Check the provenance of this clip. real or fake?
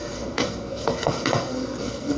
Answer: fake